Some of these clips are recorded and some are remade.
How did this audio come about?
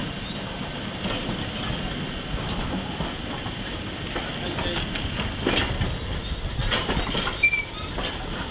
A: recorded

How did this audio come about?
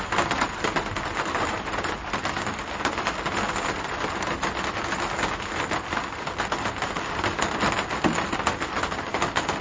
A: recorded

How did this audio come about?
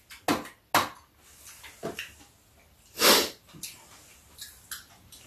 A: recorded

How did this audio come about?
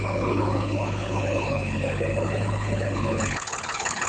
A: remade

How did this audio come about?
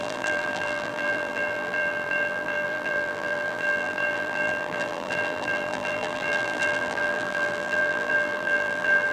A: remade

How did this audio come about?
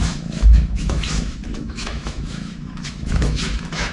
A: remade